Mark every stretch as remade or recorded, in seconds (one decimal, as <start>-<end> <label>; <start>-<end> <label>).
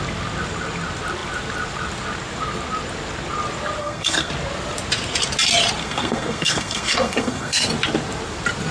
0.0-3.8 recorded; 3.8-4.3 remade; 4.3-5.8 recorded; 5.8-7.7 remade; 7.7-8.7 recorded